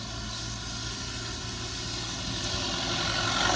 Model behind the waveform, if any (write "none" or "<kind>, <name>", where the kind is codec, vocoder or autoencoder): none